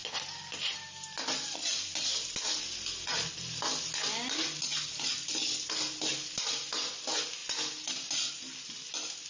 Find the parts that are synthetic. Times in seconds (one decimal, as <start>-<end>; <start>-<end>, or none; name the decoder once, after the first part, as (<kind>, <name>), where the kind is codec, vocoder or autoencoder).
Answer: none